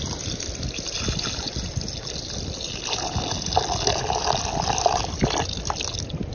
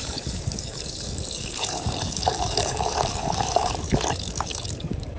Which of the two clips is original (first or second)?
first